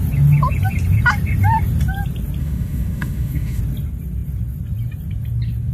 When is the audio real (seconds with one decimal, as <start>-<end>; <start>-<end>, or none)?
0.0-2.4; 3.6-5.7